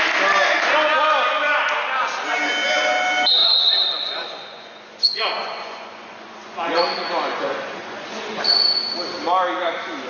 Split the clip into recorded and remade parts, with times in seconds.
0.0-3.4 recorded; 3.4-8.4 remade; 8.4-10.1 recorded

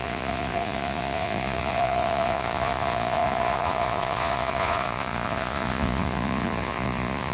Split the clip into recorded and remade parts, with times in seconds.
0.0-7.3 remade

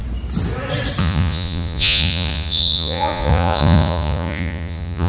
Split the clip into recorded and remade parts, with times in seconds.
0.0-1.0 recorded; 1.0-5.1 remade

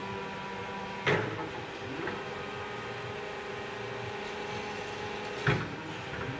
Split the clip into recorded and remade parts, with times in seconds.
0.0-6.4 recorded

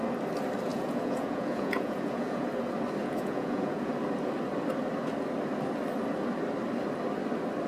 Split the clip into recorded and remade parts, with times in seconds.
0.0-0.7 recorded; 0.7-2.4 remade; 2.4-3.0 recorded; 3.0-3.9 remade; 3.9-7.7 recorded